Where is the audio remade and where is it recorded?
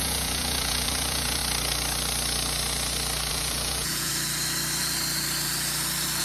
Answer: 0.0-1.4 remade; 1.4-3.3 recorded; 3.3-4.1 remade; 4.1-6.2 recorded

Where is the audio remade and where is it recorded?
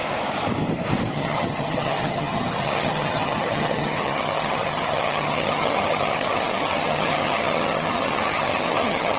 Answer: 0.0-1.1 recorded; 1.1-9.2 remade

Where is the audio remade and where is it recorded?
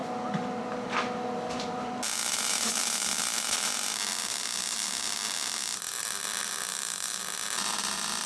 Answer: 0.0-2.2 recorded; 2.2-3.7 remade; 3.7-6.7 recorded; 6.7-7.2 remade; 7.2-8.3 recorded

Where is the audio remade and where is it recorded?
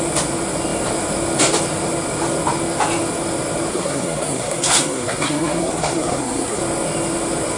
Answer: 0.0-3.7 recorded; 3.7-6.6 remade; 6.6-7.6 recorded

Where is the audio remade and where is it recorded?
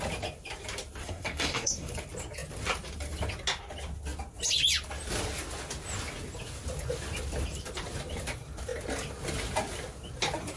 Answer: 0.0-1.0 recorded; 1.0-1.9 remade; 1.9-10.6 recorded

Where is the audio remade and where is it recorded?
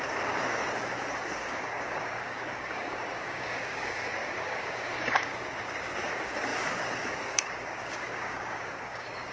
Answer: 0.0-9.3 remade